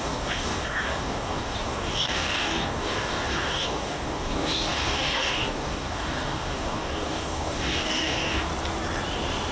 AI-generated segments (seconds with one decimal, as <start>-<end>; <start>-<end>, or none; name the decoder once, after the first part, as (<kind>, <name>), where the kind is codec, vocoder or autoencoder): 0.0-8.5 (codec, DAC)